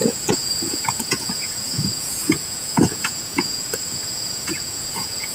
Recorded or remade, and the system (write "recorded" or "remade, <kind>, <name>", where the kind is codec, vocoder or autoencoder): remade, vocoder, Vocos